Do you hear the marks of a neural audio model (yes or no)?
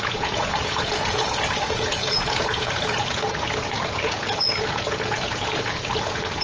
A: yes